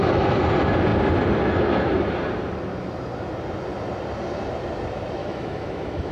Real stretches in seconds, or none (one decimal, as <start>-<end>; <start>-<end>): 0.0-5.2